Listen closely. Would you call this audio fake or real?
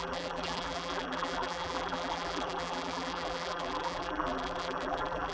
fake